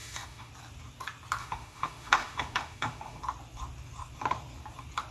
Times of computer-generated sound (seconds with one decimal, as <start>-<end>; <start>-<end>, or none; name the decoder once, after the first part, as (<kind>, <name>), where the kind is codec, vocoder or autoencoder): 0.0-0.5 (autoencoder, DAC-VAE); 1.4-3.2